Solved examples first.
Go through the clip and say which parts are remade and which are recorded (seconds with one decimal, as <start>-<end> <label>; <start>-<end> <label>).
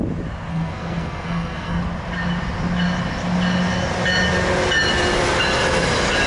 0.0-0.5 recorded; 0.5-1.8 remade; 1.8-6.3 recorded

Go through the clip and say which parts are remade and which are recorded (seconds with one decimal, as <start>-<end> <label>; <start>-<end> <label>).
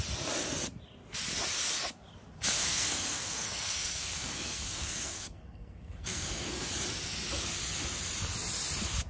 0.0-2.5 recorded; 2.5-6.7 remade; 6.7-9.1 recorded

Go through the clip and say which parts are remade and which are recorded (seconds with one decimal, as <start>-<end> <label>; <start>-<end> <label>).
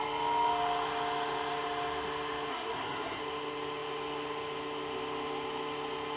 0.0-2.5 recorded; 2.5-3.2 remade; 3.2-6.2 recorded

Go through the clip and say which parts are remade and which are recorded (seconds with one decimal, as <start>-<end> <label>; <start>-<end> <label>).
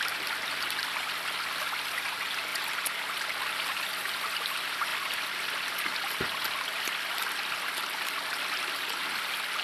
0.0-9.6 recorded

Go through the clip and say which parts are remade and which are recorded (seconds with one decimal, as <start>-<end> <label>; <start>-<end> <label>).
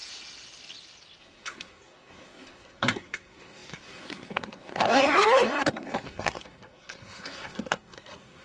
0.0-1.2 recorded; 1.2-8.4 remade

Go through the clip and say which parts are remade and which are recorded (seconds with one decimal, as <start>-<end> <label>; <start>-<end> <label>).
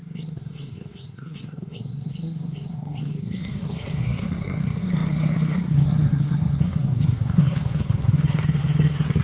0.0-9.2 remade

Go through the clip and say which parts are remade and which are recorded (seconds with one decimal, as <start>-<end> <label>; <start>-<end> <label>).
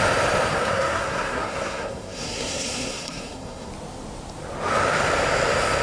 0.0-0.5 recorded; 0.5-3.7 remade; 3.7-5.8 recorded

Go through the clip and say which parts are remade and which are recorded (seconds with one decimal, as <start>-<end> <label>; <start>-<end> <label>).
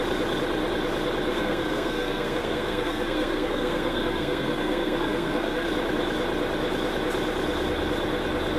0.0-1.3 recorded; 1.3-5.7 remade; 5.7-8.6 recorded